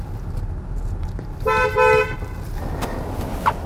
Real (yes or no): yes